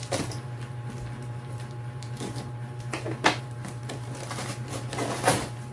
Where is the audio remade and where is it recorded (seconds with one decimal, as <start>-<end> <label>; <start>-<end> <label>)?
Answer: 0.0-5.7 recorded